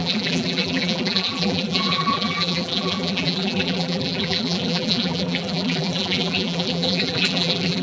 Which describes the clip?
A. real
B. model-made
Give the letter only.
B